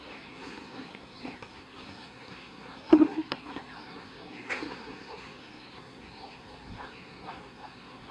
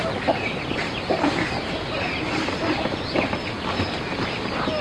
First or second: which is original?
second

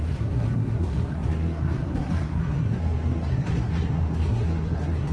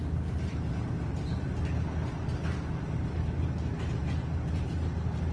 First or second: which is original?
second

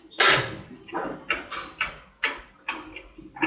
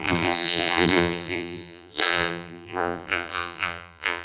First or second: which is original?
first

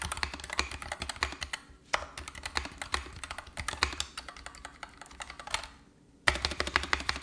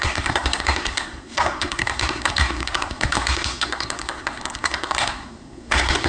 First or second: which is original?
first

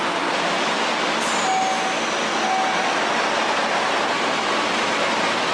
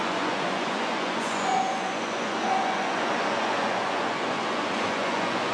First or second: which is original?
first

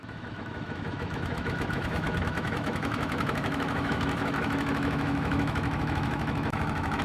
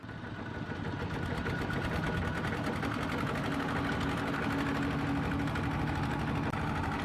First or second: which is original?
second